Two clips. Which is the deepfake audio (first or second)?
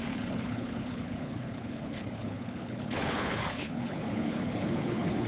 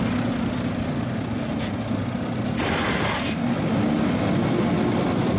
first